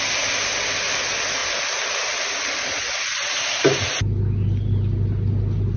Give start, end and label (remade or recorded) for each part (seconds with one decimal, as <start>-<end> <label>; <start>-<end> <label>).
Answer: 0.0-1.4 recorded; 1.4-3.5 remade; 3.5-5.8 recorded